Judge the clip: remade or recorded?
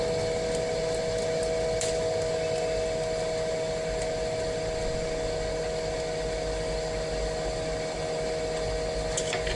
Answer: recorded